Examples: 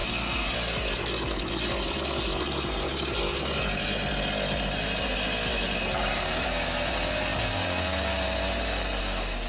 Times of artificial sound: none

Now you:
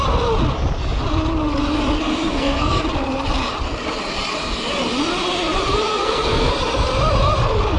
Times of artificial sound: 2.1-2.8 (codec, SNAC); 5.9-6.5

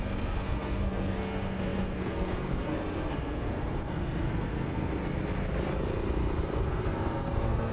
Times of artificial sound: 0.0-5.0 (codec, SNAC); 6.6-7.7

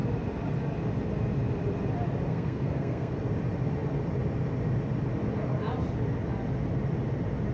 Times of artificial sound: 2.3-3.1 (codec, SNAC)